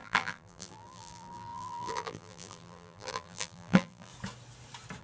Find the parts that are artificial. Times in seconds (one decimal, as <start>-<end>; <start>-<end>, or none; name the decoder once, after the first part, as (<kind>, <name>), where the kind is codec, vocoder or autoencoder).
0.0-4.1 (vocoder, BigVGAN v2)

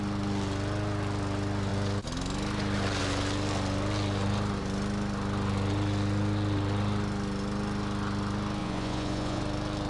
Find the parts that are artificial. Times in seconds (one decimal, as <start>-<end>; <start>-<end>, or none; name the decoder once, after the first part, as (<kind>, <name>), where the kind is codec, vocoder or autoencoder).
8.6-9.4 (vocoder, Vocos)

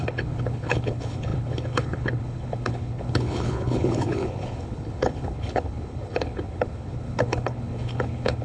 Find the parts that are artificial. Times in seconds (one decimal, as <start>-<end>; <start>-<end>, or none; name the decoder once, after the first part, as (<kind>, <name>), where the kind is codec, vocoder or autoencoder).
0.0-8.4 (codec, HILCodec)

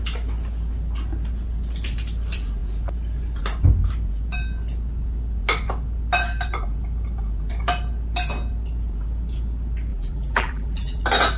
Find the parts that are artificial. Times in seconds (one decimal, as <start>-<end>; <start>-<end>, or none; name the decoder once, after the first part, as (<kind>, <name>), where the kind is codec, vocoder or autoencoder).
9.9-11.0 (vocoder, BigVGAN v2)

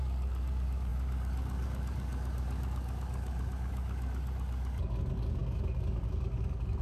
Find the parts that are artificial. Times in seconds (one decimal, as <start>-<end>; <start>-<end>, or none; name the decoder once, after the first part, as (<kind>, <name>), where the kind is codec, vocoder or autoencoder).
0.0-6.8 (codec, DAC)

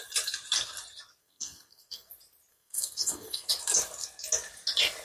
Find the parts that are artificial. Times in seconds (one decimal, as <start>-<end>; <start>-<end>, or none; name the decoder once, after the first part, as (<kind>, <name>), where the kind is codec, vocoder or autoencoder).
1.2-2.1 (codec, SNAC); 2.5-3.5